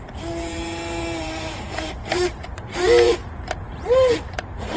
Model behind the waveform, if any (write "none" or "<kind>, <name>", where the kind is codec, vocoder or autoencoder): vocoder, BigVGAN v2